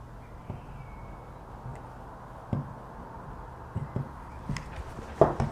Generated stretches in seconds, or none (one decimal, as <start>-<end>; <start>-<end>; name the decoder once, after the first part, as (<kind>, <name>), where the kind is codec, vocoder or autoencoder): 1.7-5.0 (vocoder, BigVGAN v2)